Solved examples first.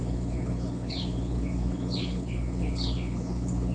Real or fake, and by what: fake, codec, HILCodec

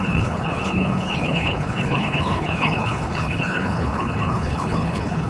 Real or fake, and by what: fake, codec, HILCodec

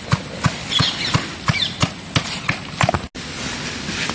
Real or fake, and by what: real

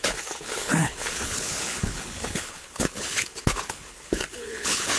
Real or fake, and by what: fake, codec, HILCodec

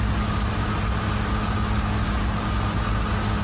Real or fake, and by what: real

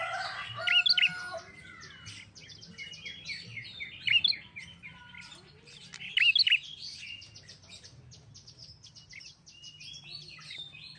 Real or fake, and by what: real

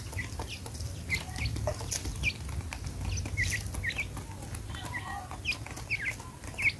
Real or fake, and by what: real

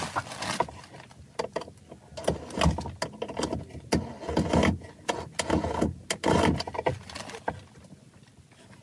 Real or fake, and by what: real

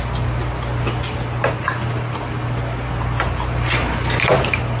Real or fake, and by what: real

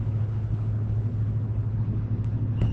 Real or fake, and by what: fake, codec, HILCodec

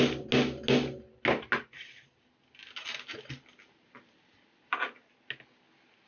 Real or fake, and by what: real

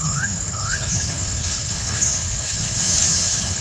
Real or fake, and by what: fake, codec, HILCodec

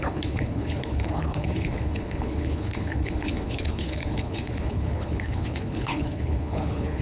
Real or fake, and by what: fake, codec, HILCodec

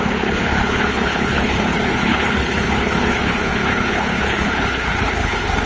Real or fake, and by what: fake, codec, HILCodec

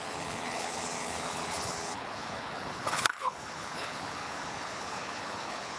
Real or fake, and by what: fake, codec, HILCodec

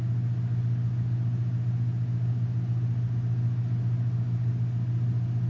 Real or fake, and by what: real